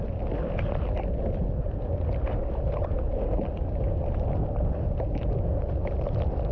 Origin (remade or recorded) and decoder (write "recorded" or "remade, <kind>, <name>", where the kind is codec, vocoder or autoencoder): recorded